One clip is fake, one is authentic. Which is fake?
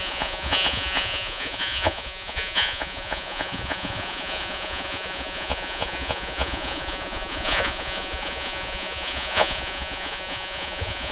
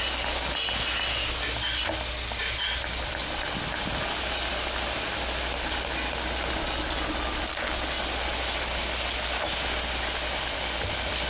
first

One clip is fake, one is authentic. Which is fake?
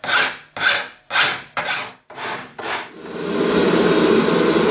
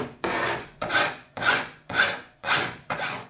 second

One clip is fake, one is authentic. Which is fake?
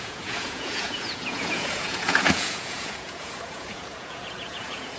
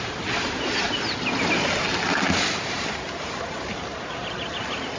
first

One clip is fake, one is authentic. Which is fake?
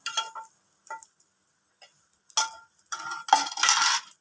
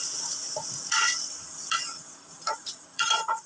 second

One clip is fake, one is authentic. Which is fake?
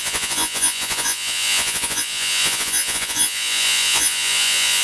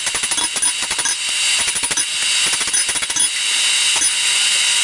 first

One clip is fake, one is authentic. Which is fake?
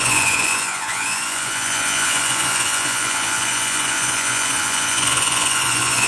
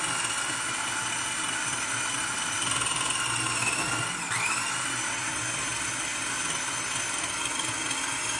first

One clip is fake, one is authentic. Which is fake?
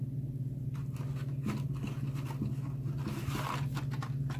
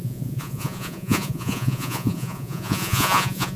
second